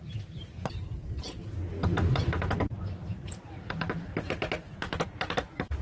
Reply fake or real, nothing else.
real